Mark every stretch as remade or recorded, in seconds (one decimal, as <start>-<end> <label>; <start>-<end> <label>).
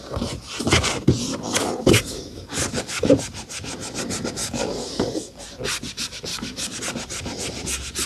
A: 0.0-1.3 recorded; 1.3-3.1 remade; 3.1-4.4 recorded; 4.4-5.4 remade; 5.4-6.3 recorded; 6.3-6.8 remade; 6.8-8.1 recorded